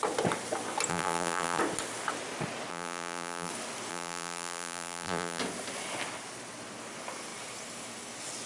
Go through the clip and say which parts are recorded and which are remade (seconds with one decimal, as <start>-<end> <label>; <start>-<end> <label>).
0.0-0.9 recorded; 0.9-1.6 remade; 1.6-2.7 recorded; 2.7-3.5 remade; 3.5-3.9 recorded; 3.9-5.4 remade; 5.4-8.5 recorded